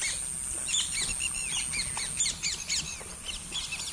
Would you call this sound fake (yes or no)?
no